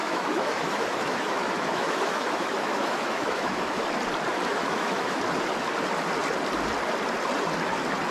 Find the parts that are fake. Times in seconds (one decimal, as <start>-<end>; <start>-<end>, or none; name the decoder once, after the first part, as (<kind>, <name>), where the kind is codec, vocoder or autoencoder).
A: 0.0-3.8 (autoencoder, DAC-VAE); 4.5-5.2